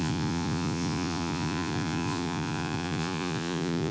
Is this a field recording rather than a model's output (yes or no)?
no